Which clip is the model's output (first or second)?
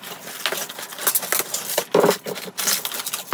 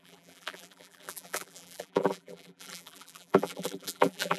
second